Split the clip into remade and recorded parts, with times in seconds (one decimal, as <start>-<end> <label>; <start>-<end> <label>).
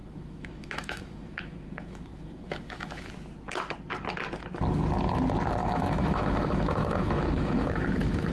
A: 0.0-3.1 remade; 3.1-5.6 recorded; 5.6-8.3 remade